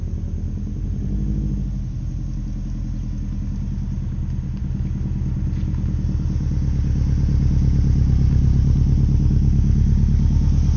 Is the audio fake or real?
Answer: real